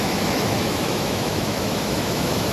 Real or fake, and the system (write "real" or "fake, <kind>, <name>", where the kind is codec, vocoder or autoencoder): fake, autoencoder, DAC-VAE